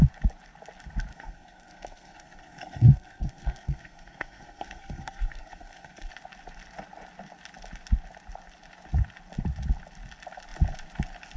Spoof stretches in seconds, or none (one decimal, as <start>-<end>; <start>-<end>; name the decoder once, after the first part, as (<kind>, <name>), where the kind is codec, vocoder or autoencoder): 1.1-6.1 (codec, SNAC)